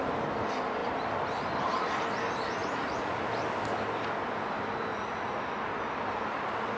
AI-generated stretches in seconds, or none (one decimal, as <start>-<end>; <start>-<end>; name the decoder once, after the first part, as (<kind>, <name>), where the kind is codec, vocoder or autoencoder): 2.6-3.2 (vocoder, Vocos); 4.9-5.4